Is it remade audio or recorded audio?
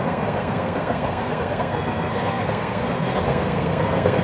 remade